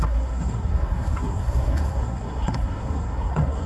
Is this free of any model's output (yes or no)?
no